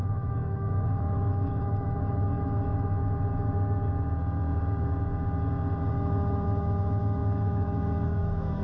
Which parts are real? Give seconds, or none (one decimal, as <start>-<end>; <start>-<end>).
2.7-5.9